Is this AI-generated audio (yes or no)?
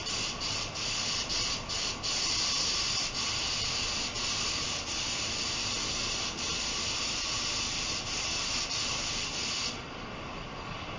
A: no